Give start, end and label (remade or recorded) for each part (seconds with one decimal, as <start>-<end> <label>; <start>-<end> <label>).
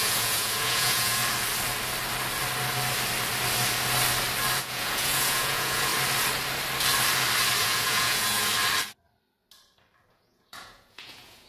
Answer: 0.0-1.2 remade; 1.2-4.6 recorded; 4.6-5.9 remade; 5.9-7.6 recorded; 7.6-8.5 remade; 8.5-10.1 recorded; 10.1-11.5 remade